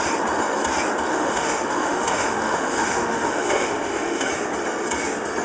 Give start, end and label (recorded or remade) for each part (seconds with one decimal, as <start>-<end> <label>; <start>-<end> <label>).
0.0-1.1 recorded; 1.1-4.3 remade; 4.3-5.4 recorded